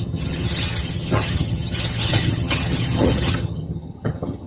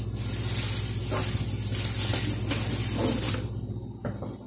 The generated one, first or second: first